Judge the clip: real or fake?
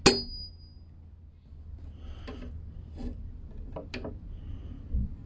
real